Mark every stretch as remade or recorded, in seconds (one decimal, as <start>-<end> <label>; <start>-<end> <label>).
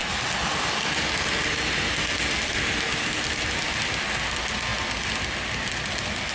0.0-6.3 recorded